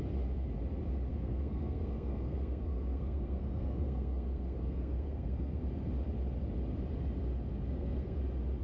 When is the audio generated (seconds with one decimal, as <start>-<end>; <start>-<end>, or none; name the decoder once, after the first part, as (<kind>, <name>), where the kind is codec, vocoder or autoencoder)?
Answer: 1.1-5.6 (codec, SNAC); 7.7-8.2